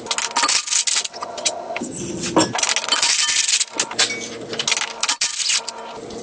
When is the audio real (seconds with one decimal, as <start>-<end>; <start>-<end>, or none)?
0.0-1.1; 2.0-6.2